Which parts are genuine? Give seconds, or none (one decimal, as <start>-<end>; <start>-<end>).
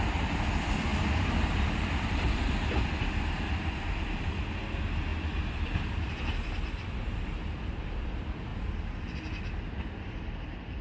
8.5-9.7